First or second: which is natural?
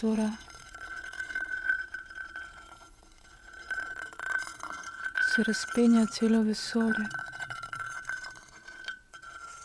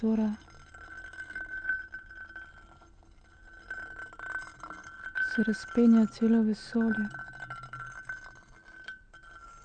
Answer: second